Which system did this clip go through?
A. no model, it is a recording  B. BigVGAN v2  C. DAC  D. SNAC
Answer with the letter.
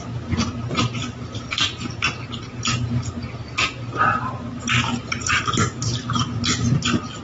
A